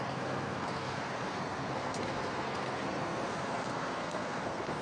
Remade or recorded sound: remade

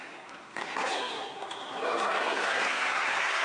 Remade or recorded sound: remade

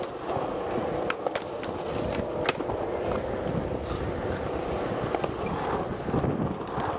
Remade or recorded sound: recorded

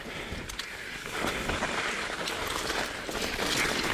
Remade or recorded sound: recorded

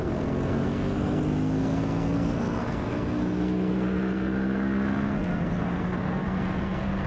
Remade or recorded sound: remade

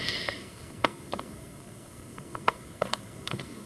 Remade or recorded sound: remade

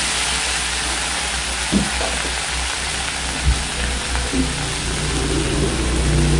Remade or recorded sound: recorded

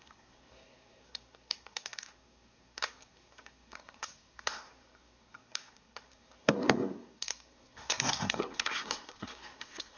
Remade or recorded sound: remade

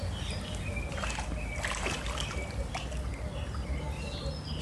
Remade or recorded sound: recorded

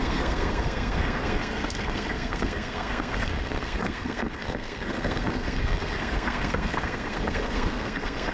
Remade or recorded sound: remade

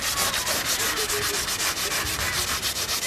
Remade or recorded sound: recorded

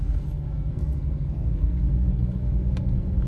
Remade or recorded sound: remade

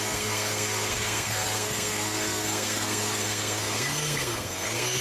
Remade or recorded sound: remade